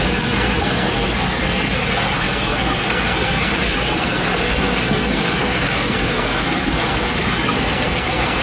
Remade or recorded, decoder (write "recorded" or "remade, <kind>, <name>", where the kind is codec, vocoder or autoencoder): remade, codec, SNAC